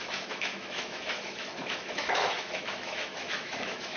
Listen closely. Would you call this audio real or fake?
fake